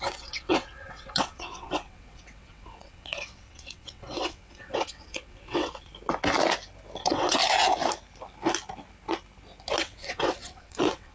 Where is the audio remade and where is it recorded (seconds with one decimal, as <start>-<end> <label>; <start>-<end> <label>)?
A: 0.0-5.9 remade; 5.9-7.0 recorded; 7.0-7.4 remade; 7.4-9.8 recorded; 9.8-11.1 remade